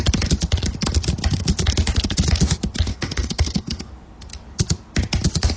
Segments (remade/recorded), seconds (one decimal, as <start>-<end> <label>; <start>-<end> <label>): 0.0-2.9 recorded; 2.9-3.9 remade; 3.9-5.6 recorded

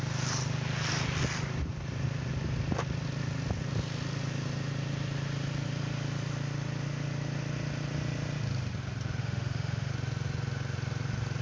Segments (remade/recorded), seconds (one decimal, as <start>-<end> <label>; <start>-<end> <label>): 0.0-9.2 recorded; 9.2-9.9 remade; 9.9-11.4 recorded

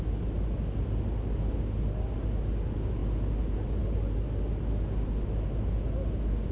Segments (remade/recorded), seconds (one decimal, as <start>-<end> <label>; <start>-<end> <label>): 0.0-6.5 recorded

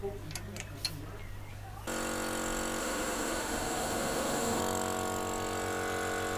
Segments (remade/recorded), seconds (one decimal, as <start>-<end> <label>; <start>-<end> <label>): 0.0-2.8 recorded; 2.8-4.6 remade; 4.6-6.4 recorded

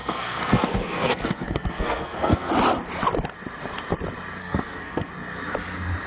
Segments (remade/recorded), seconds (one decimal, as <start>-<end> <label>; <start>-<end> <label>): 0.0-2.5 remade; 2.5-4.4 recorded; 4.4-5.1 remade; 5.1-6.1 recorded

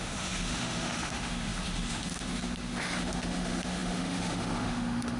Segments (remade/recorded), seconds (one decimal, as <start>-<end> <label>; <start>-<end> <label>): 0.0-5.2 remade